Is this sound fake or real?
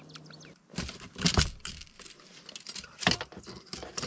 real